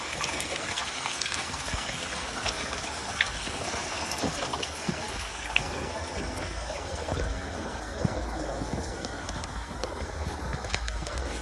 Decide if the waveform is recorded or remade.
remade